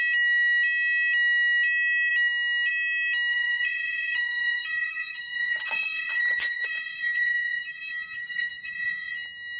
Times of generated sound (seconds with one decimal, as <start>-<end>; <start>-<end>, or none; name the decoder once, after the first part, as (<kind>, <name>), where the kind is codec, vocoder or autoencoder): 3.3-7.8 (vocoder, Vocos); 8.3-9.1